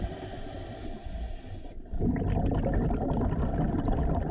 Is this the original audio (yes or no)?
yes